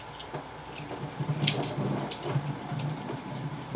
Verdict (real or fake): real